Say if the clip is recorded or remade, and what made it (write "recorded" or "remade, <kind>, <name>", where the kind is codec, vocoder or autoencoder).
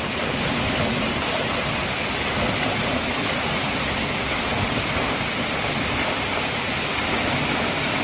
recorded